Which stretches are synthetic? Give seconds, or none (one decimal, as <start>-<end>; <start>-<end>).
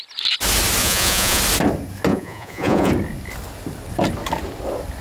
0.8-1.4; 2.1-2.9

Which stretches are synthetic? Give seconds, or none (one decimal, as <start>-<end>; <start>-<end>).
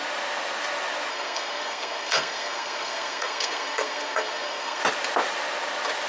1.1-4.8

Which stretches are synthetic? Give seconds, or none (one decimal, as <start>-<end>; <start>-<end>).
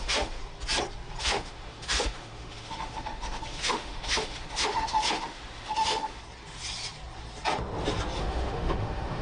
0.0-0.4; 1.2-6.2; 8.2-9.2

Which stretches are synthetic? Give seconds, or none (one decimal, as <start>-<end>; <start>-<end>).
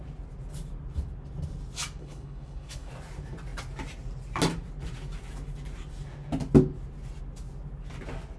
2.0-2.9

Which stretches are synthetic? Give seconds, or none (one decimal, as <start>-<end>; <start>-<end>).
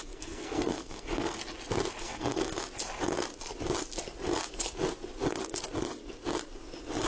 0.0-1.4; 2.0-2.5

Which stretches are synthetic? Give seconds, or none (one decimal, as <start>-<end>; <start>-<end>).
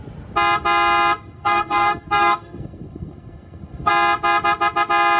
1.2-3.9